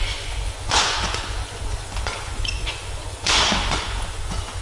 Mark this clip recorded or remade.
remade